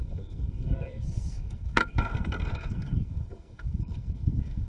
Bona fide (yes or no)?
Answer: no